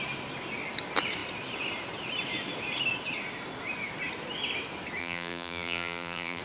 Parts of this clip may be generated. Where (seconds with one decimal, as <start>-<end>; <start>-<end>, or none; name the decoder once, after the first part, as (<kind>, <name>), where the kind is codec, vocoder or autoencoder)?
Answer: 5.0-6.4 (vocoder, BigVGAN v2)